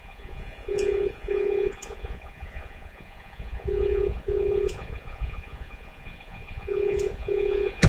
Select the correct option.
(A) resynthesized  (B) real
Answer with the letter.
A